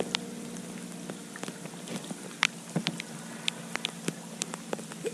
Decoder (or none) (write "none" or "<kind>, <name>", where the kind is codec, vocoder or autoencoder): none